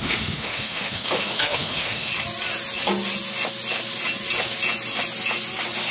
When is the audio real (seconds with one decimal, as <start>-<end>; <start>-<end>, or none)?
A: 2.1-5.9